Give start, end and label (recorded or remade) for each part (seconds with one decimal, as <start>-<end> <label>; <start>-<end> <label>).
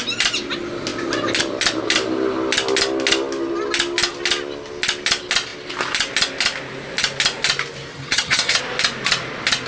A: 0.0-7.9 recorded; 7.9-8.6 remade; 8.6-9.7 recorded